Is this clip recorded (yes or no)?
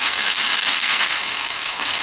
no